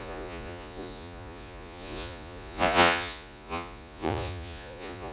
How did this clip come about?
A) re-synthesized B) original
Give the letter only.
A